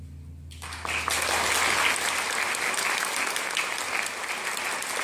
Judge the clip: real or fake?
real